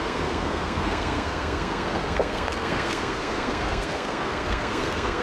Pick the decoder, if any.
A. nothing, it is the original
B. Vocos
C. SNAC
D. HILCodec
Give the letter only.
C